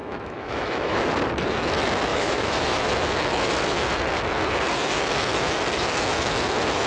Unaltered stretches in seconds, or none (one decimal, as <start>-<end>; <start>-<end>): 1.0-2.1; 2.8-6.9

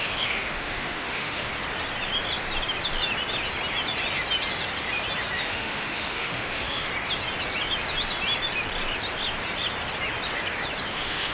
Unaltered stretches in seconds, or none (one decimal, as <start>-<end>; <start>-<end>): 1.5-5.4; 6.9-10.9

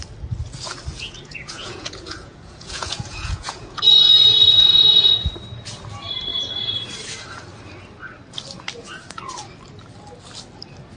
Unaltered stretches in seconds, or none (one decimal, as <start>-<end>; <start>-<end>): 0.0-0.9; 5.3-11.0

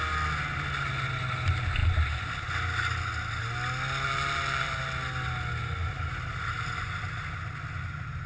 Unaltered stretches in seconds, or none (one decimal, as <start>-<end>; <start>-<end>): 0.0-4.1; 4.8-8.3

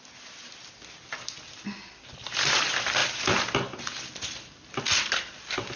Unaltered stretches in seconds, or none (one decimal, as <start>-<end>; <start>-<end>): 0.0-5.8